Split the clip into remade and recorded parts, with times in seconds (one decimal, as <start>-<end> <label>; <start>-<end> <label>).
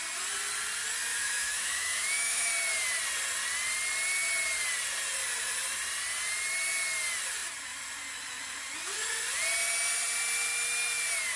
0.0-1.1 recorded; 1.1-2.5 remade; 2.5-11.4 recorded